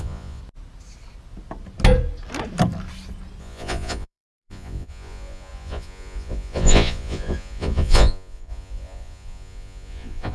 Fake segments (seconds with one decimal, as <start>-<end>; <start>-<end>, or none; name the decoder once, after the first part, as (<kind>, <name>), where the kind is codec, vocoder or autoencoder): 0.0-0.4 (vocoder, Vocos); 3.4-10.3